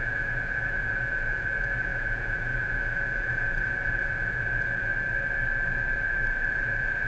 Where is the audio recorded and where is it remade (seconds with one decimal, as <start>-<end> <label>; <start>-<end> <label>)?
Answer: 0.0-4.9 remade; 4.9-6.5 recorded; 6.5-7.1 remade